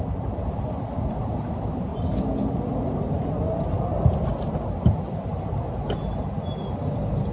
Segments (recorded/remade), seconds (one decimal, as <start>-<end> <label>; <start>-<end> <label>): 0.0-7.3 recorded